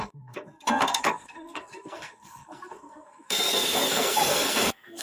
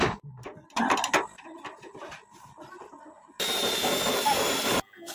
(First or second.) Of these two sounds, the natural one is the second